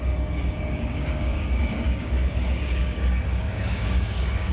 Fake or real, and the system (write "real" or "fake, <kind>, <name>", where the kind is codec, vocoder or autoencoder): fake, codec, DAC